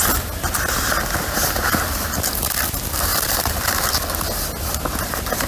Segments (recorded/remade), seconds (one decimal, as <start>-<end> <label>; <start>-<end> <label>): 0.0-3.1 recorded; 3.1-3.9 remade; 3.9-5.5 recorded